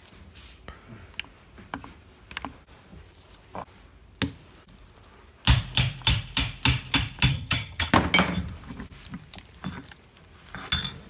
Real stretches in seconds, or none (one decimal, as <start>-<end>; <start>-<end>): 0.0-7.3; 7.9-11.1

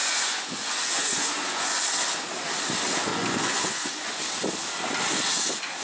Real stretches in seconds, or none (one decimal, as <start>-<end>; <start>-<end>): 1.8-3.1; 4.2-5.8

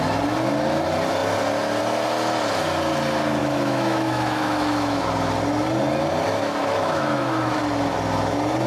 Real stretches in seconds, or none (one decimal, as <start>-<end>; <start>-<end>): 0.0-3.4; 5.0-6.3; 7.6-8.7

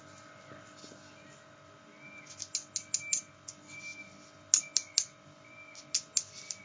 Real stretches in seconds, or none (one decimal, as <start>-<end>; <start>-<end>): 0.0-6.6

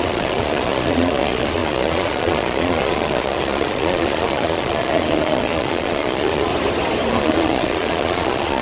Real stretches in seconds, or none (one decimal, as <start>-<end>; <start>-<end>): 6.5-7.1